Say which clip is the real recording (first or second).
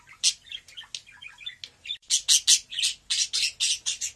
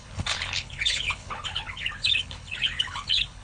first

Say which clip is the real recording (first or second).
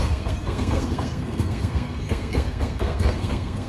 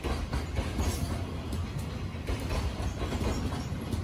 second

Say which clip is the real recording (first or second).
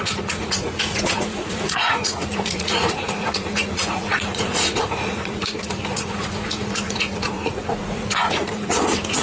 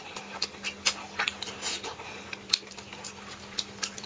second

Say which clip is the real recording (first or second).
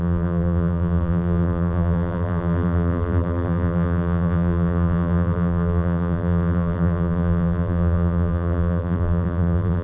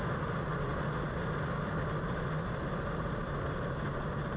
second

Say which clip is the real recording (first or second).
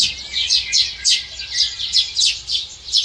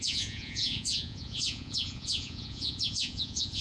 first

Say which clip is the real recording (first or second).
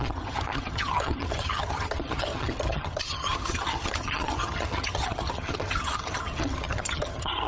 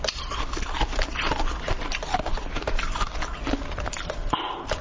second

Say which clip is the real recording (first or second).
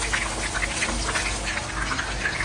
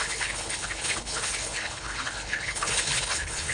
first